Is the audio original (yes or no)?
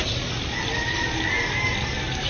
yes